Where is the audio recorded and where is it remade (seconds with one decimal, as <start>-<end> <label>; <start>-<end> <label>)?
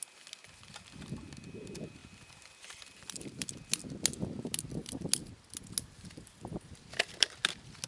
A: 0.0-7.9 recorded